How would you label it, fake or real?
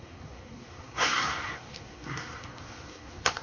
fake